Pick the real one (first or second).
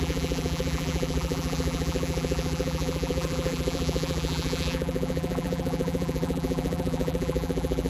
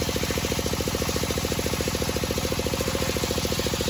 second